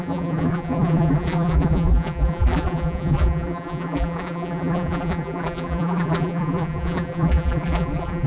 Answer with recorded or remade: remade